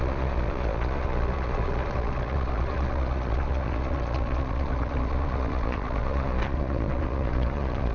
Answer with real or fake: fake